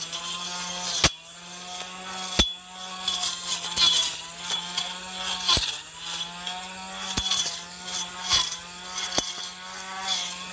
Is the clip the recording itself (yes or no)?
yes